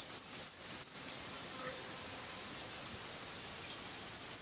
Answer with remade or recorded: recorded